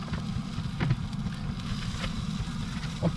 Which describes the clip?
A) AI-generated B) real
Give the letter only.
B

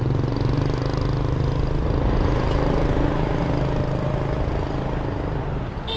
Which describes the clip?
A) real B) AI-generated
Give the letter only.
A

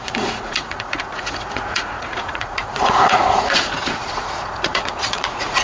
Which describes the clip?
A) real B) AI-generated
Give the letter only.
B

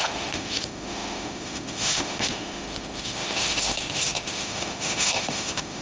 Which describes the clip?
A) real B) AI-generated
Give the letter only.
B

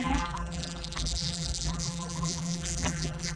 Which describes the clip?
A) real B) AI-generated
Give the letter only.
B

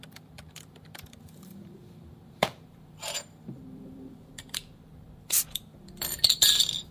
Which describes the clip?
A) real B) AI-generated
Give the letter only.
B